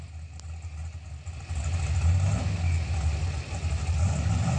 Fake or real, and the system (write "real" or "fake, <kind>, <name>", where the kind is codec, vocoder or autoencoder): real